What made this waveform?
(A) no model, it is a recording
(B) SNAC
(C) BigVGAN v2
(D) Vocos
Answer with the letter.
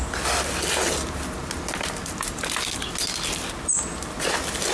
A